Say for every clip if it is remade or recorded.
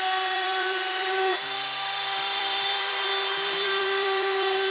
remade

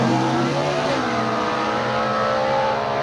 remade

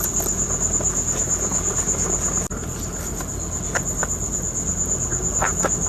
recorded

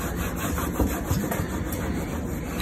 recorded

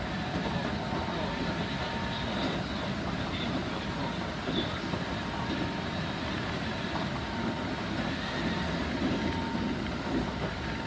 recorded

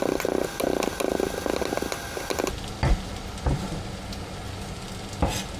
recorded